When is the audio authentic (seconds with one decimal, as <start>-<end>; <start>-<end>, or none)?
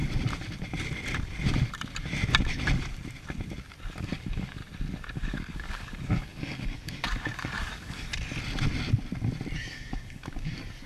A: 0.0-4.0; 4.6-5.1; 8.1-9.6